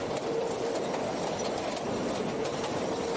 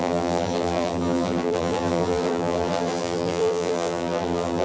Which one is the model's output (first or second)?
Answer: second